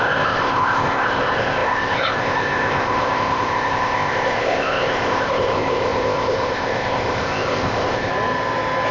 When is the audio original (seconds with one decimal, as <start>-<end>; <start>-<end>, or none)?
8.1-8.9